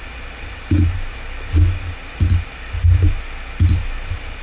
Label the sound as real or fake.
real